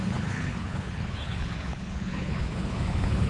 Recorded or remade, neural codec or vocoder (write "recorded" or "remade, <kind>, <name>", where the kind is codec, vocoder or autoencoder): remade, codec, HILCodec